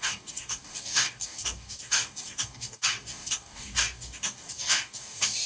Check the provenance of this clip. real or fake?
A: fake